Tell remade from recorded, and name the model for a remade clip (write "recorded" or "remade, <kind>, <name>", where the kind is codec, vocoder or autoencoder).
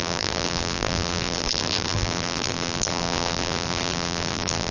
remade, vocoder, BigVGAN v2